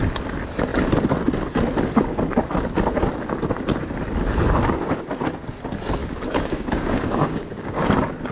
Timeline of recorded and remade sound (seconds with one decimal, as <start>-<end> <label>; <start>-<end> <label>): 0.0-6.0 recorded; 6.0-7.9 remade; 7.9-8.3 recorded